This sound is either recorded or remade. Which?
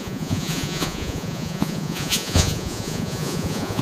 remade